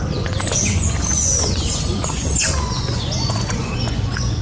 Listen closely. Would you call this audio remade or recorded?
remade